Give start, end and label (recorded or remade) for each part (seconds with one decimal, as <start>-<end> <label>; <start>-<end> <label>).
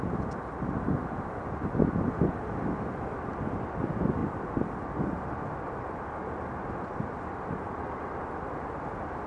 0.0-9.3 recorded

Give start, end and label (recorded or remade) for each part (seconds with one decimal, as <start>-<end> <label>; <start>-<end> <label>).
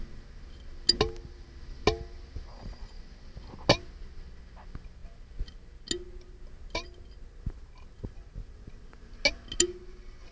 0.0-2.5 recorded; 2.5-3.0 remade; 3.0-10.3 recorded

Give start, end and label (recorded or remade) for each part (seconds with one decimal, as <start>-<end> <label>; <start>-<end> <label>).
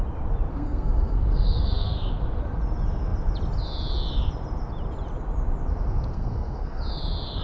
0.0-0.5 recorded; 0.5-2.1 remade; 2.1-6.1 recorded; 6.1-6.8 remade; 6.8-7.4 recorded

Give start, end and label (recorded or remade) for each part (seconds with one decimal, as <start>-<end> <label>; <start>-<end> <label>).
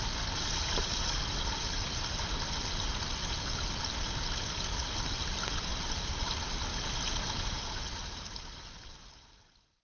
0.0-2.9 recorded; 2.9-3.6 remade; 3.6-6.7 recorded; 6.7-7.7 remade; 7.7-9.8 recorded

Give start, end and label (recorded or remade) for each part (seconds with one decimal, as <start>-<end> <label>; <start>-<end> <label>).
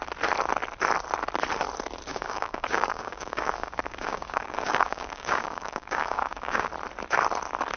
0.0-2.1 recorded; 2.1-6.7 remade; 6.7-7.8 recorded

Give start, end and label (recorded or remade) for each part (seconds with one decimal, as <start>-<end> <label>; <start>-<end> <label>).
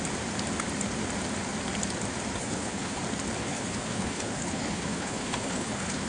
0.0-2.4 recorded; 2.4-3.0 remade; 3.0-3.4 recorded; 3.4-6.1 remade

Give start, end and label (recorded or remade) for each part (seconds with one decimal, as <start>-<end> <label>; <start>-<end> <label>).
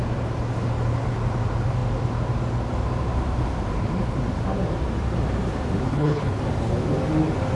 0.0-5.9 recorded; 5.9-6.4 remade; 6.4-7.6 recorded